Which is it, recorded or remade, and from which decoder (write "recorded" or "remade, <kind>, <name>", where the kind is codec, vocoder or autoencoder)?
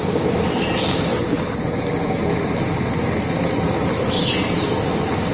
recorded